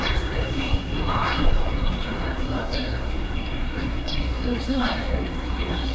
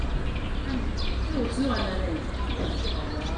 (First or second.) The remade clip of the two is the first